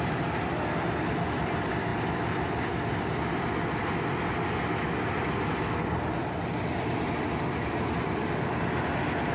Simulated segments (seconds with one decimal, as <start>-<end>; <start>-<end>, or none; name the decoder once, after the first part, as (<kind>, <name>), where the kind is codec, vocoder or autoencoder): none